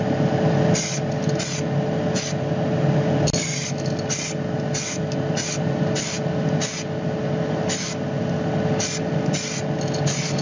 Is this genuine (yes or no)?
yes